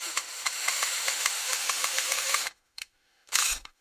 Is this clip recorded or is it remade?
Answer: remade